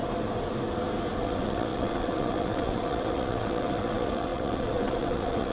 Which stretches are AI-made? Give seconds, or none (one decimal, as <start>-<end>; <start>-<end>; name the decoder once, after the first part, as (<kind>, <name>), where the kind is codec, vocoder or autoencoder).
1.2-5.5 (vocoder, WaveNeXt)